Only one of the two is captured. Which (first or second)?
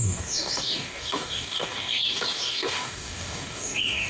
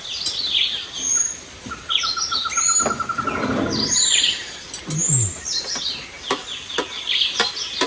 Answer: second